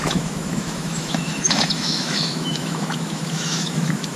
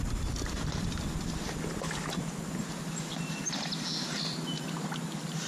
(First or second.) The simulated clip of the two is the first